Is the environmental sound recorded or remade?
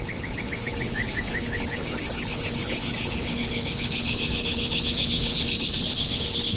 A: remade